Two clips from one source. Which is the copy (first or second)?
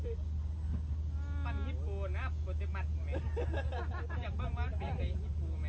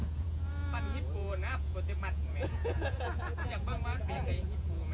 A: second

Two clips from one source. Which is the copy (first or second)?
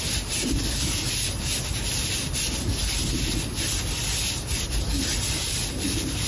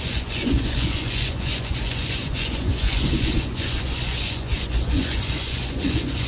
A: second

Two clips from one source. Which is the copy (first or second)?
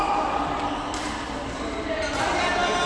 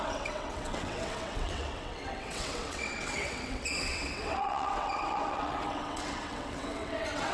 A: second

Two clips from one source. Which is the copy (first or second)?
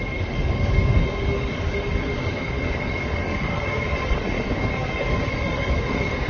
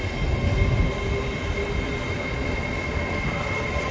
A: first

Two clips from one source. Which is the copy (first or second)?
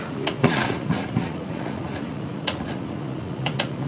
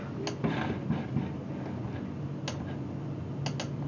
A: first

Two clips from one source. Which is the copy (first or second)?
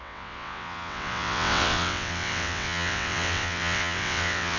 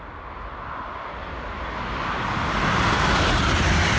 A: first